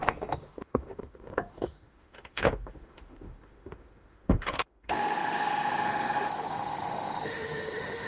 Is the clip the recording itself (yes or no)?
no